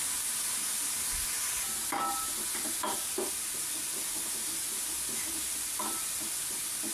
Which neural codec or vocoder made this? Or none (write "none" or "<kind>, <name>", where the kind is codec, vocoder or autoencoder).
none